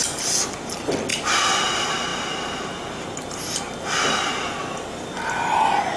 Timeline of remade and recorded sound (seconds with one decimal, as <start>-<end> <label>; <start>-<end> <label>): 0.0-6.0 recorded